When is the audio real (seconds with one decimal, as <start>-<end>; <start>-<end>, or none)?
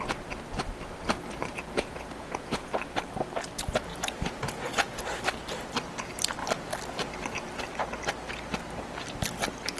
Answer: 0.0-1.5; 2.7-3.9; 5.0-9.8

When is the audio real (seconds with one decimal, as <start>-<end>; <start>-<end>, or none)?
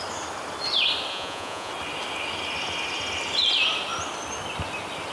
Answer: 0.0-1.1; 1.7-5.1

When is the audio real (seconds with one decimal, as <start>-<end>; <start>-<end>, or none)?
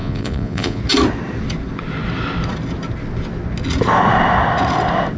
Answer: 0.8-5.2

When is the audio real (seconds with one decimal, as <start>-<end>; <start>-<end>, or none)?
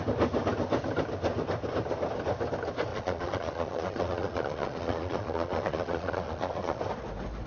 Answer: 0.0-2.9; 6.8-7.5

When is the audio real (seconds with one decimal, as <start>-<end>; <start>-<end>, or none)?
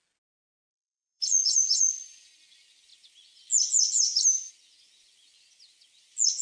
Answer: 0.0-0.7; 1.9-6.4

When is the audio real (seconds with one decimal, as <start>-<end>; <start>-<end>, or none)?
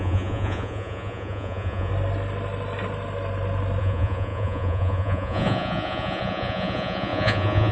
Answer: 1.9-3.8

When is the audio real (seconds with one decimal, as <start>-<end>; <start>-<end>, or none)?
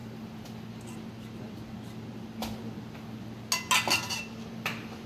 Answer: 0.0-5.1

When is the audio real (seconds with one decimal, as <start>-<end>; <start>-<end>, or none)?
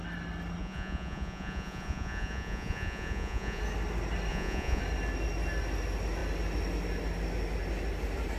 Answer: 0.0-0.6; 3.6-4.3; 4.8-8.4